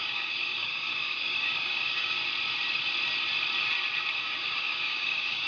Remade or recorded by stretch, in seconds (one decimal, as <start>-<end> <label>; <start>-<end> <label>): 0.0-2.2 remade; 2.2-4.2 recorded; 4.2-5.5 remade